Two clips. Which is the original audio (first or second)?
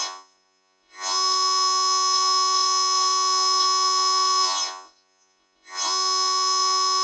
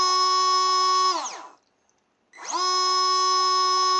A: second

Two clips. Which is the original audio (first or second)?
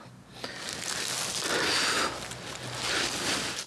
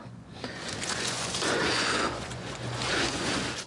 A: first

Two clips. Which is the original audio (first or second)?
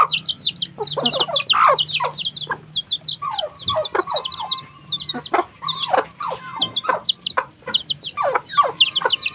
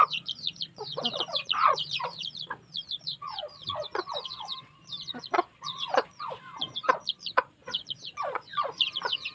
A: first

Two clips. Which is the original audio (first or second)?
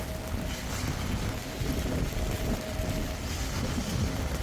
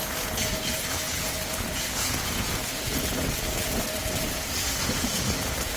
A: first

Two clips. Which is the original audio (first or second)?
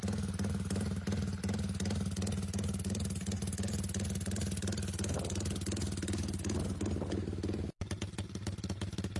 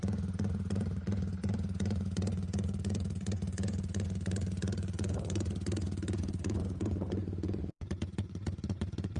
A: first